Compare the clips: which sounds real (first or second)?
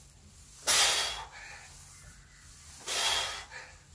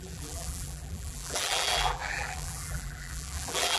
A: first